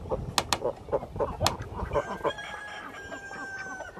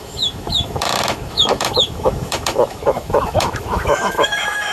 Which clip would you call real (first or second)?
first